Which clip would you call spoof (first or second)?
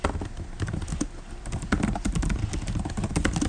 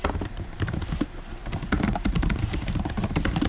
second